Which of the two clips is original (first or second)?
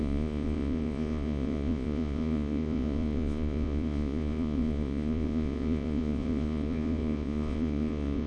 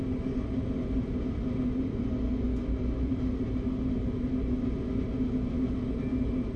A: second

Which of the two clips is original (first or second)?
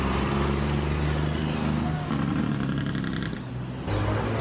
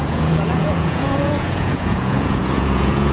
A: first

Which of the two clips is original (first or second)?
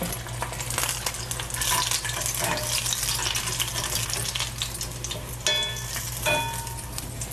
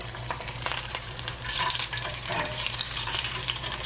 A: first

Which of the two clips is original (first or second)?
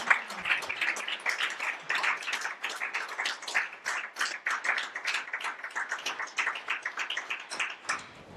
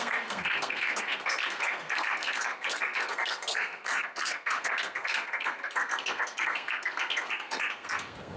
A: first